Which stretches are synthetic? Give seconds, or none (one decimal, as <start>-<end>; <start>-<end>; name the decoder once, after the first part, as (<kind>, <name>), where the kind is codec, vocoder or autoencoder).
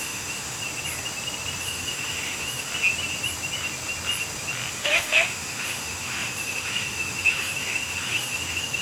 0.0-0.6 (autoencoder, DAC-VAE); 1.6-2.7; 4.7-8.8